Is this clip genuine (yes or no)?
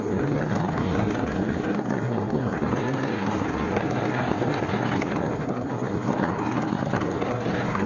no